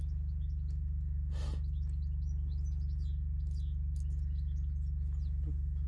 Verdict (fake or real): real